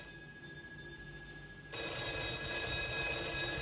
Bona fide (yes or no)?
yes